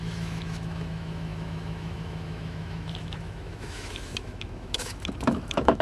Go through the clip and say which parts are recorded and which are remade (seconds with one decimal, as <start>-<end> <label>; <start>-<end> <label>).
0.0-5.8 remade